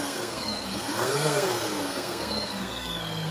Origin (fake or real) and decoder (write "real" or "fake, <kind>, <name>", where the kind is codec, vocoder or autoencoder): fake, codec, SNAC